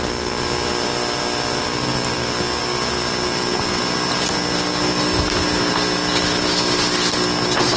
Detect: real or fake real